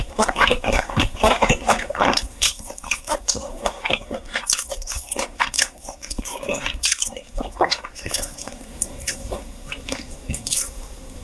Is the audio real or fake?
fake